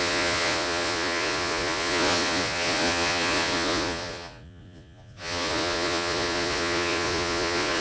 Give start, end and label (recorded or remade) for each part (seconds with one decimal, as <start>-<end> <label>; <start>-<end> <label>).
0.0-7.8 remade